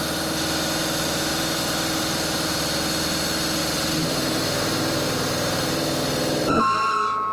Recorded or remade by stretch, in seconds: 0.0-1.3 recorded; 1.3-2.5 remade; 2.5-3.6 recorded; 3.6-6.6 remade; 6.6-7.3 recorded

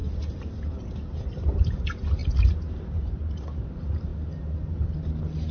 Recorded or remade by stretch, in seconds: 0.0-5.5 recorded

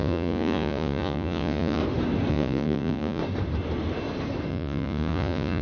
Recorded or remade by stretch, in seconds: 0.0-1.8 remade; 1.8-2.3 recorded; 2.3-3.2 remade; 3.2-4.5 recorded; 4.5-5.6 remade